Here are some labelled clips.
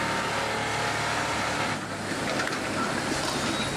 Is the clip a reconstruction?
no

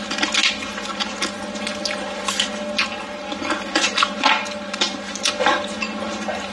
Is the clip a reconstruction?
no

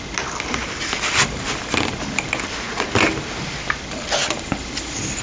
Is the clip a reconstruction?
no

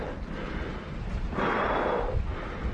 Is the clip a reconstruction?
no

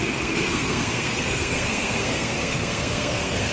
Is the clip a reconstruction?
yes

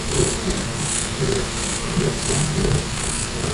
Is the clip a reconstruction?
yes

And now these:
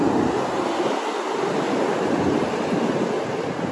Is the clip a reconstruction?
no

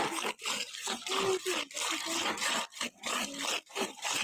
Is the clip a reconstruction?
no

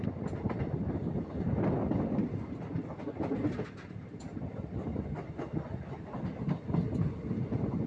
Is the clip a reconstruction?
no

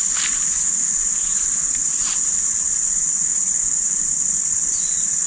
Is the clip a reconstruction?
no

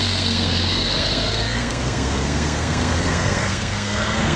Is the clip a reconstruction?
yes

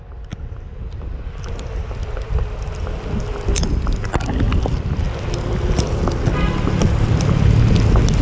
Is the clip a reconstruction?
no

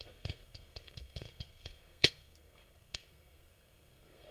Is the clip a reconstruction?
yes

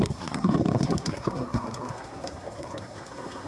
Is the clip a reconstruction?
yes